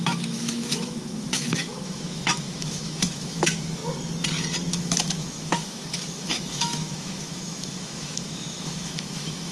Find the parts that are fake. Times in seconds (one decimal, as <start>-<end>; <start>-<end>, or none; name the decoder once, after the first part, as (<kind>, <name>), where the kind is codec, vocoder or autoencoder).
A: 0.0-3.8 (autoencoder, DAC-VAE); 4.7-9.5